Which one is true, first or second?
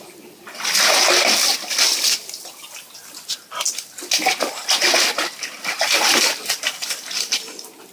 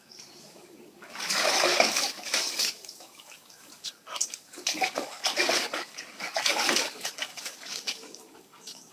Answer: first